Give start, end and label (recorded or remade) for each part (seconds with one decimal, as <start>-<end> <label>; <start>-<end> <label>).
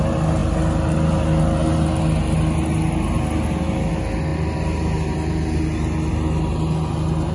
0.0-7.3 recorded